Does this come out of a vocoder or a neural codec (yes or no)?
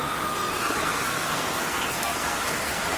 yes